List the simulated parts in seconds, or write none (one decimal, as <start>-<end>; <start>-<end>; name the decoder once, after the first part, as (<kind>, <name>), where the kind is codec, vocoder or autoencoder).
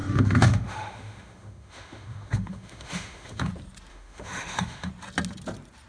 0.0-3.5 (autoencoder, DAC-VAE); 3.9-4.9